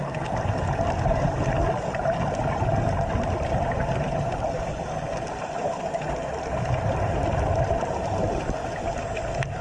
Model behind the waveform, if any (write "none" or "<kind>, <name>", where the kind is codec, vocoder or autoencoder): none